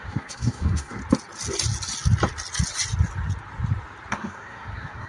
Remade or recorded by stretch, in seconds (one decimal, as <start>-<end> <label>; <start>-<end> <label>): 0.0-1.0 remade; 1.0-4.1 recorded; 4.1-5.1 remade